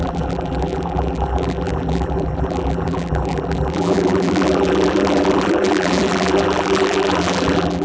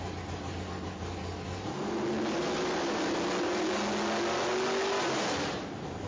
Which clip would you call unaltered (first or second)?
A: second